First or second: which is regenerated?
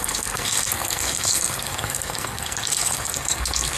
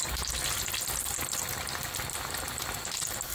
first